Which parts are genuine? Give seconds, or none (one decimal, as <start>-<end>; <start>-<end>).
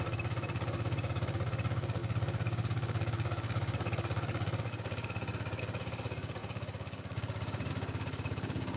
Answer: none